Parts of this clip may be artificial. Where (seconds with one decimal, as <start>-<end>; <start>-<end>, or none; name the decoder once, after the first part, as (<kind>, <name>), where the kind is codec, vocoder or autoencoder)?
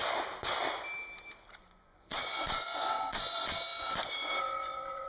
1.6-5.1 (vocoder, Vocos)